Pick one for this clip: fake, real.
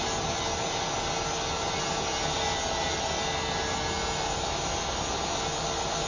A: real